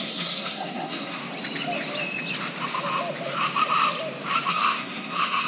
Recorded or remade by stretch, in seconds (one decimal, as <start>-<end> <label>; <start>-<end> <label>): 0.0-1.2 remade; 1.2-4.5 recorded; 4.5-5.5 remade